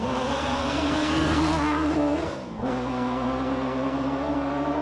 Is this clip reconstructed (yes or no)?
yes